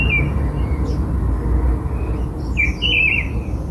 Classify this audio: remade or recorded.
recorded